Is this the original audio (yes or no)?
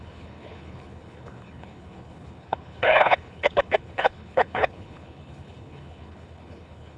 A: no